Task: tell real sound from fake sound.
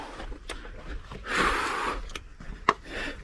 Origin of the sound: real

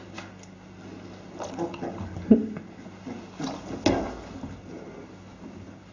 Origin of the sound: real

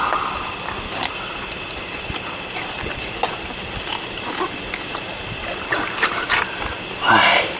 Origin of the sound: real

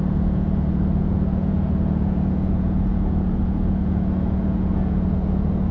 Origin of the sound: fake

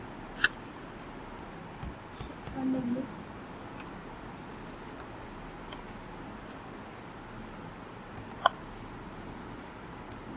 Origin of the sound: real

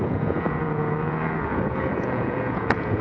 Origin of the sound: fake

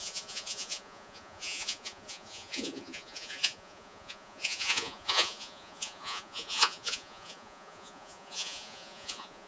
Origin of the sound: fake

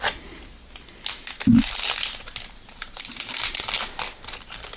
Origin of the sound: real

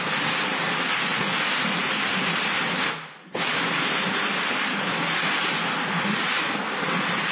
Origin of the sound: real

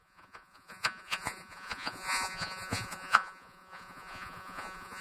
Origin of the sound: fake